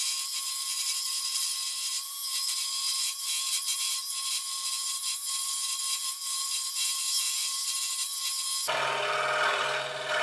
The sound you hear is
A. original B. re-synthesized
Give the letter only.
B